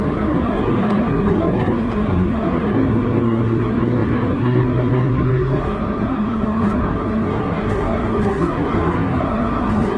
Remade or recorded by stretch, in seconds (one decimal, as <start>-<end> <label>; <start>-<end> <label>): 0.0-10.0 remade